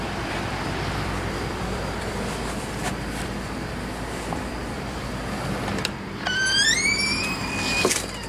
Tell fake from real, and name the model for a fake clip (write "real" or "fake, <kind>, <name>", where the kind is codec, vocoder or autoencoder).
fake, vocoder, BigVGAN v2